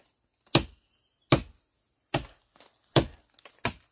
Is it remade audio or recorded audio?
recorded